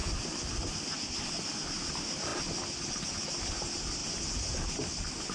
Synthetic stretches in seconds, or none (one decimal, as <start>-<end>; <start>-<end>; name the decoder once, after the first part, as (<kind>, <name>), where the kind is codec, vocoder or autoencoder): none